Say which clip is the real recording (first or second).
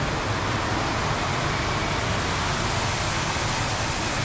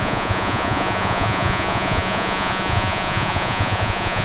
first